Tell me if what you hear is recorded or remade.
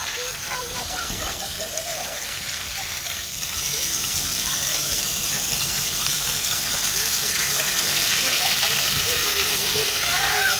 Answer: remade